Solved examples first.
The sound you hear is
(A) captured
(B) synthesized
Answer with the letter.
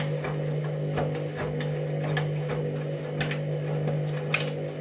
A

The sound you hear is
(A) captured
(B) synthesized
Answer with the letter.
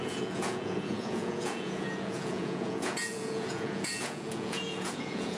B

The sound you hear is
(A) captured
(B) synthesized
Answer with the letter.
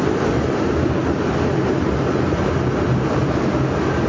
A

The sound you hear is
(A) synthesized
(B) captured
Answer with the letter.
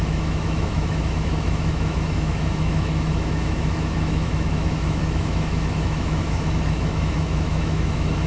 A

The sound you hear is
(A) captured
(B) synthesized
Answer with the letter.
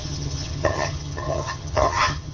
B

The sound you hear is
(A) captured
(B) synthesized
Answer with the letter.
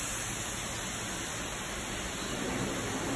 A